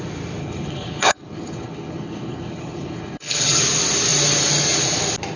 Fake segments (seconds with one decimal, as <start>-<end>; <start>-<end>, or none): 0.4-3.6